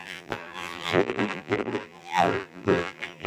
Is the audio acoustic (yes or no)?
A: no